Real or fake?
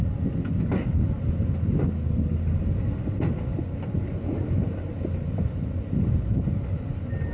real